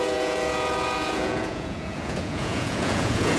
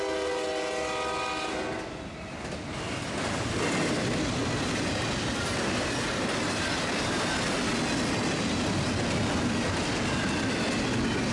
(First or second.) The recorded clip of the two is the second